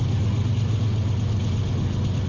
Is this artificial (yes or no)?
no